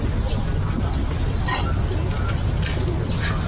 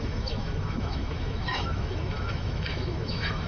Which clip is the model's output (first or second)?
second